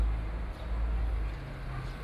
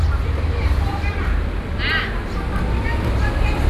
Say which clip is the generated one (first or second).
second